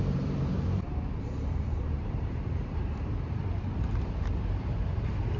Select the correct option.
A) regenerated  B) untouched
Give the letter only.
A